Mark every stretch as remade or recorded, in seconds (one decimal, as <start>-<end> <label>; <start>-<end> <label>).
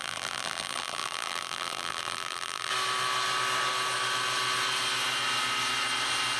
0.0-2.7 remade; 2.7-6.4 recorded